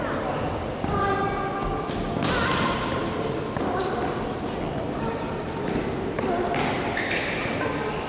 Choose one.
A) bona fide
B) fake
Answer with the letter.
A